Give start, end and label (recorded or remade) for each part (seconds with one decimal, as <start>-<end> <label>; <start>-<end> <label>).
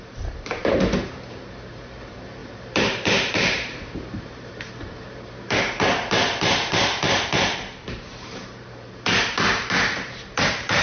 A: 0.0-10.8 remade